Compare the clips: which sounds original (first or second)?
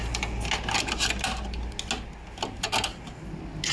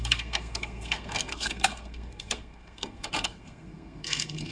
first